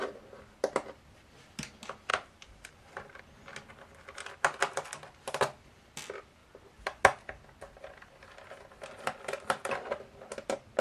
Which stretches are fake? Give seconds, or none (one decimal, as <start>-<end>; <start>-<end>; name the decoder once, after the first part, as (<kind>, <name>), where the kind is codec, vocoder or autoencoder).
2.1-3.2 (vocoder, BigVGAN v2)